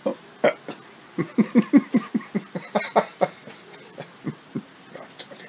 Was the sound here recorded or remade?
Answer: recorded